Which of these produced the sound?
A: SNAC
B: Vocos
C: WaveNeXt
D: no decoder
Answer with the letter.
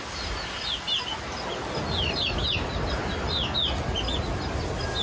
D